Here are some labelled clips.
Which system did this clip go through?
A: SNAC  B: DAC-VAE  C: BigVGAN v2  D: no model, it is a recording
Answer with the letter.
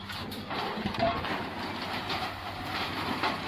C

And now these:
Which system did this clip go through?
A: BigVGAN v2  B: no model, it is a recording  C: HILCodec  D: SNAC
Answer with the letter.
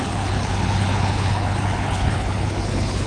C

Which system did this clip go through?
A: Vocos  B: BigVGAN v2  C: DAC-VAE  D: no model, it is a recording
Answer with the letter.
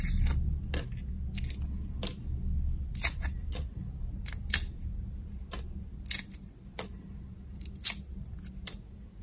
D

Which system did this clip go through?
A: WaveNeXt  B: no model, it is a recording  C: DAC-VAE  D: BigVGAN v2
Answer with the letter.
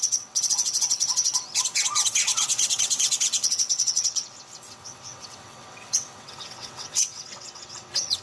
A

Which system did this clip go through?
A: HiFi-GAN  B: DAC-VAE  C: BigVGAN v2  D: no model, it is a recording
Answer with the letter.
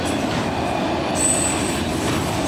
D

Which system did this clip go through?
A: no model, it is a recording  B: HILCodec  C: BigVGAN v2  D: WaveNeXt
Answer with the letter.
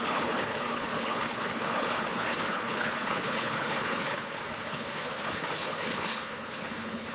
B